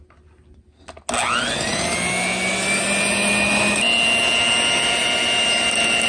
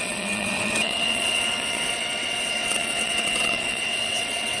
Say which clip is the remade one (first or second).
second